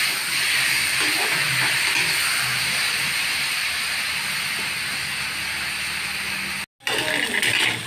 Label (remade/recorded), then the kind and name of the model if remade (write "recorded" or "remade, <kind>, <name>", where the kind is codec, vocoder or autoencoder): recorded